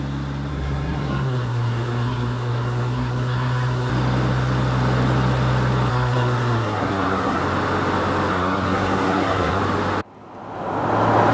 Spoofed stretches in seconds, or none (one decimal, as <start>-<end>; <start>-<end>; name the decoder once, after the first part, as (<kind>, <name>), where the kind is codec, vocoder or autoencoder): 0.5-3.9 (codec, SNAC); 5.9-7.4; 8.3-9.6